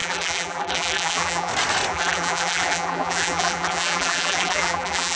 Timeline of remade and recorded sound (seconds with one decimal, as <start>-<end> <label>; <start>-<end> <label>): 0.0-1.5 remade; 1.5-1.9 recorded; 1.9-5.2 remade